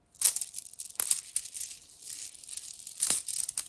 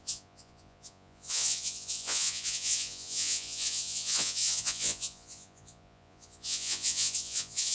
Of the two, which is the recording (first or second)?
first